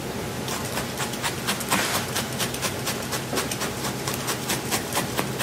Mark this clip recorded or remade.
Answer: recorded